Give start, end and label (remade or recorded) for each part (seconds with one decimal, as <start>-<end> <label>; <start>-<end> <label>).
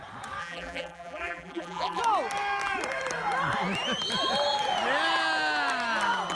0.0-0.4 recorded; 0.4-2.0 remade; 2.0-6.3 recorded